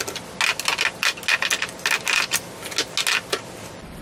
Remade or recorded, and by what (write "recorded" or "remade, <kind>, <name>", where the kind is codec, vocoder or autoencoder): recorded